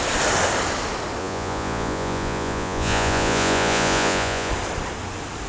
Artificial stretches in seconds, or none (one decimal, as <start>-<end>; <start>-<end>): 1.2-4.5

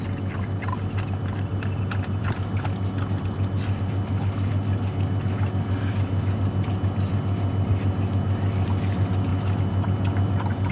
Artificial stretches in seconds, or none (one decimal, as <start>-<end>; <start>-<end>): none

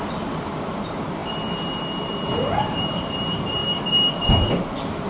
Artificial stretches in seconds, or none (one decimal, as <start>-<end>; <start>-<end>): 0.0-3.6; 4.5-5.1

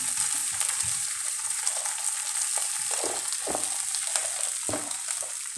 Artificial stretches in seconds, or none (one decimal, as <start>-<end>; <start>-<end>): 0.4-2.0